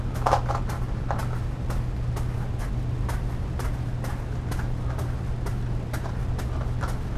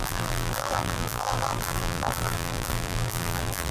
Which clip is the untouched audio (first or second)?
first